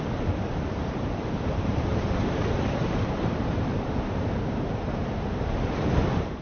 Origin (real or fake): fake